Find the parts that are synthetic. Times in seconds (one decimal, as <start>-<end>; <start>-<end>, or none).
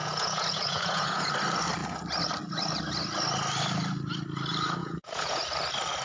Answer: 0.0-1.3; 4.8-5.4